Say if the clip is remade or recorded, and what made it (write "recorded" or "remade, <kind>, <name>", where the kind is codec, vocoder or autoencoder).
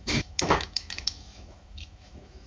remade, autoencoder, DAC-VAE